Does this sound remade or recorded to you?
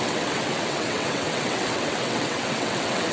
remade